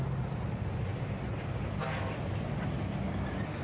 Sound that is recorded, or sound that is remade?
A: recorded